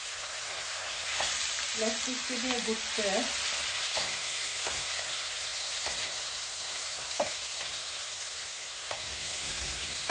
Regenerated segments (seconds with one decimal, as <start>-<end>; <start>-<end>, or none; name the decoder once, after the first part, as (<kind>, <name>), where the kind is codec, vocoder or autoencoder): 0.0-1.3 (codec, SNAC); 3.7-10.1